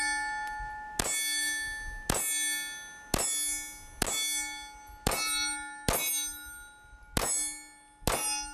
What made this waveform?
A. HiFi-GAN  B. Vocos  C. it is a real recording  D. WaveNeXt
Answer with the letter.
C